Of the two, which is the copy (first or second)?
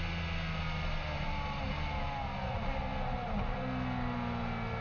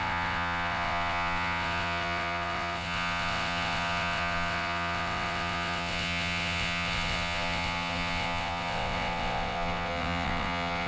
second